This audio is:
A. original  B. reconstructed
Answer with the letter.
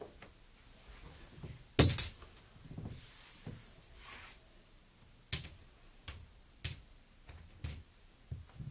A